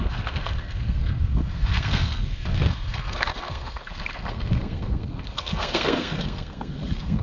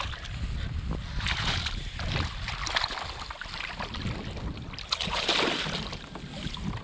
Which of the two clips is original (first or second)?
second